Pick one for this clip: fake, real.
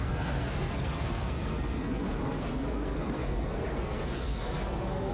fake